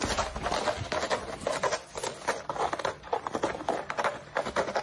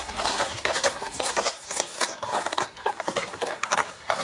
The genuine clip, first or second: first